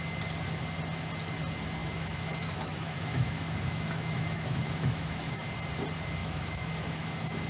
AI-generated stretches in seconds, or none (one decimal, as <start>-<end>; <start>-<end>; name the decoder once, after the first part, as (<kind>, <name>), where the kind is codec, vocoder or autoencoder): 1.8-5.4 (autoencoder, DAC-VAE); 6.2-7.5